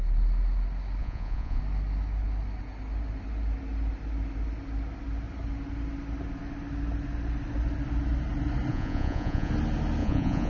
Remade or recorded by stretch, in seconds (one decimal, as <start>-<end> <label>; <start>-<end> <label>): 0.0-1.0 recorded; 1.0-1.6 remade; 1.6-8.7 recorded; 8.7-9.5 remade; 9.5-10.0 recorded; 10.0-10.5 remade

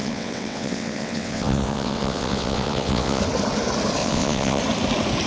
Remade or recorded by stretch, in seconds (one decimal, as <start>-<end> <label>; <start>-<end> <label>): 0.0-3.2 remade; 3.2-4.0 recorded; 4.0-4.6 remade; 4.6-5.3 recorded

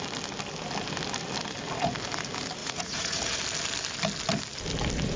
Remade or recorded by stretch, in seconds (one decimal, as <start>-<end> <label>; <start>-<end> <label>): 0.0-2.6 recorded; 2.6-3.2 remade; 3.2-5.2 recorded